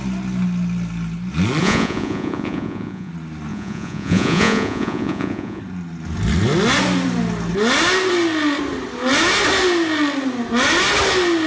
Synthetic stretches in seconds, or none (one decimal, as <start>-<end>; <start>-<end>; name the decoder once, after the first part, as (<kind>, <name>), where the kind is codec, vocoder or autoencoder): 1.6-3.1 (vocoder, Vocos); 3.5-5.6